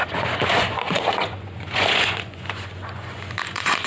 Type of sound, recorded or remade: remade